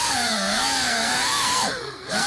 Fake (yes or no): yes